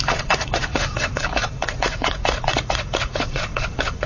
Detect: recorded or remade remade